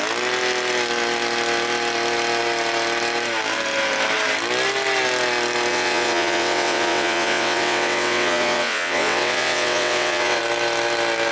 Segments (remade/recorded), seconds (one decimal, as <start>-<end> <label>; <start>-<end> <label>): 0.0-5.7 recorded; 5.7-10.4 remade; 10.4-11.3 recorded